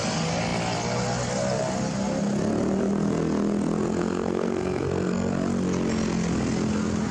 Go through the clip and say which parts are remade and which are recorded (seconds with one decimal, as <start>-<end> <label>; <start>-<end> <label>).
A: 0.0-4.0 recorded; 4.0-5.3 remade; 5.3-7.1 recorded